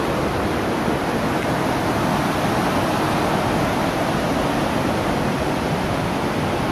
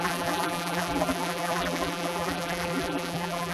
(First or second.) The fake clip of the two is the second